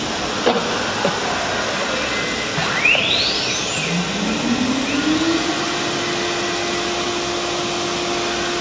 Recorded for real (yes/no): yes